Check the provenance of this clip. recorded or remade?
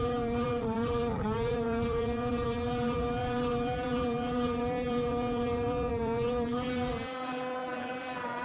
remade